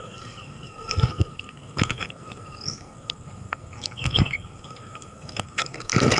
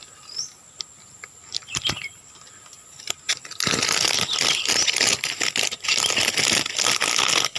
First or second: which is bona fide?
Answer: second